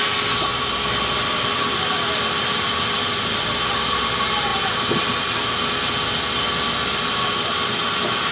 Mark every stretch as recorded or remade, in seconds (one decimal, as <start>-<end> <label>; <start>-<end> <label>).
0.0-0.5 recorded; 0.5-4.0 remade; 4.0-8.3 recorded